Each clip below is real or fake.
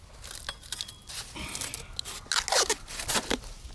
real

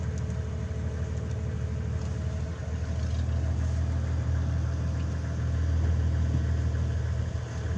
real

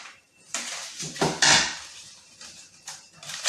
fake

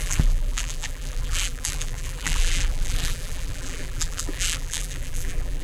fake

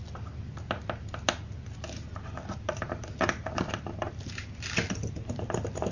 real